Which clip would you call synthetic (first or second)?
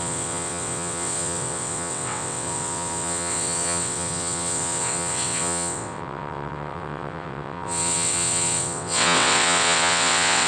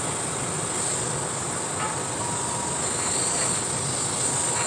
first